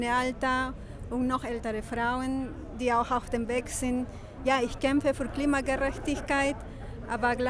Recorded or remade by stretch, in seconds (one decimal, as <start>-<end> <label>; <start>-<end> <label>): 0.0-7.5 recorded